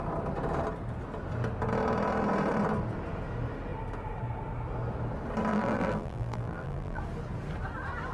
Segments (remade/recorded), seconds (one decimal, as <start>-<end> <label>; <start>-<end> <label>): 0.0-5.5 recorded; 5.5-7.0 remade; 7.0-8.1 recorded